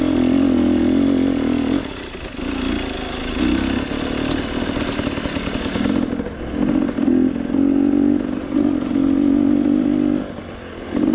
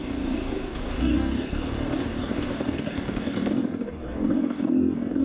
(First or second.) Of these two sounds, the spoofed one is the second